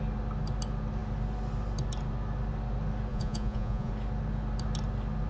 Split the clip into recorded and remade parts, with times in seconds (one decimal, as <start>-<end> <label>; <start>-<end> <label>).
0.0-3.1 recorded; 3.1-3.9 remade; 3.9-5.3 recorded